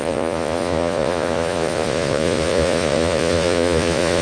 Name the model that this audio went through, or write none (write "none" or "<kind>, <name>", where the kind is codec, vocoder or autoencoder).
vocoder, Vocos